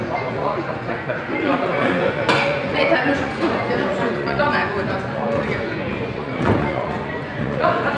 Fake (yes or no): yes